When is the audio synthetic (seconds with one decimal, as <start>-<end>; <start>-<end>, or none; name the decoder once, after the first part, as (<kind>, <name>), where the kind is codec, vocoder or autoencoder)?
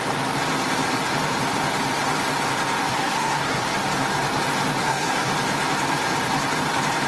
2.9-3.7 (codec, SNAC); 4.8-5.3